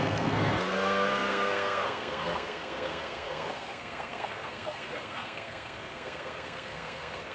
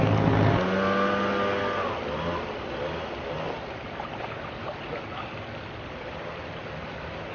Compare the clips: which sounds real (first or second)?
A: second